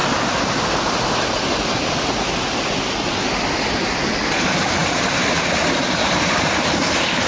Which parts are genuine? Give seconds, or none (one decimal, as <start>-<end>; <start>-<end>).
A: 0.0-7.3

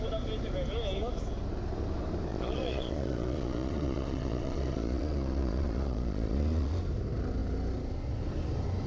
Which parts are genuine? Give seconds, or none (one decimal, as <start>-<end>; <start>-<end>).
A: 0.0-2.3; 6.7-8.9

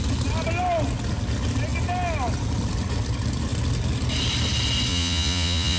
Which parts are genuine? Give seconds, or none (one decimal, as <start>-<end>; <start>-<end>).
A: 0.0-4.9

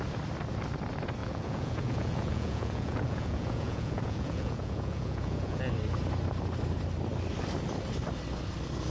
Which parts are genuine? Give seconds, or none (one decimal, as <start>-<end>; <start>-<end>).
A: 0.0-1.2; 5.6-8.9

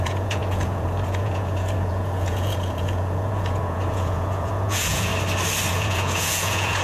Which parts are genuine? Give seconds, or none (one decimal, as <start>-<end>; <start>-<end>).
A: 5.1-5.7

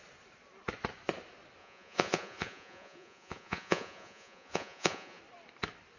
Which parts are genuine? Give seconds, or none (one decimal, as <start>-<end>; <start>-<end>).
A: 0.0-1.6; 5.2-6.0

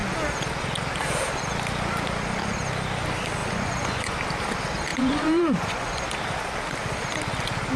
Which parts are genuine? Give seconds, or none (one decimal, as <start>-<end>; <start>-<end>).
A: 0.0-3.4; 4.2-4.9; 6.0-7.8

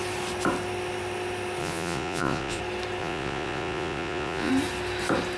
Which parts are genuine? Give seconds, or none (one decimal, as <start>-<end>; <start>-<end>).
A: 0.0-1.6; 2.6-3.0; 4.5-5.4